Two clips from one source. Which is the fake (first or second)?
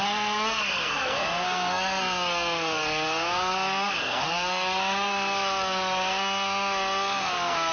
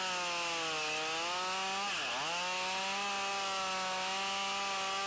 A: first